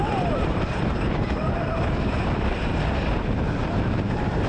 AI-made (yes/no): yes